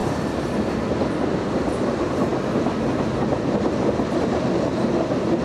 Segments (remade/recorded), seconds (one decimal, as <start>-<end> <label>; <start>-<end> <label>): 0.0-5.4 recorded